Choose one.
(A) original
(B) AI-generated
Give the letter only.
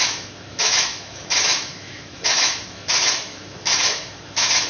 B